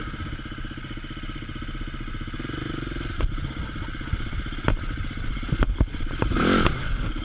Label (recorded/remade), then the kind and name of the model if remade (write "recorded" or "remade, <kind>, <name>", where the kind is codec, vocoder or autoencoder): recorded